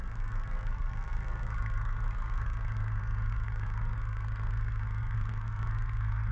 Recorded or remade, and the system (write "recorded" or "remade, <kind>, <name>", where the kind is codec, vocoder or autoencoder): remade, codec, SNAC